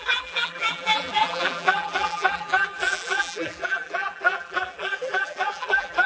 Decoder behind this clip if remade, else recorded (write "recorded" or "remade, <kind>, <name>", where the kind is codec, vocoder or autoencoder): remade, vocoder, BigVGAN v2